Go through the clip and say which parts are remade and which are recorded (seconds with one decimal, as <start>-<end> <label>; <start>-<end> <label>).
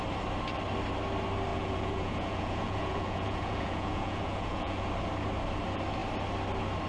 0.0-1.5 recorded; 1.5-4.9 remade; 4.9-6.9 recorded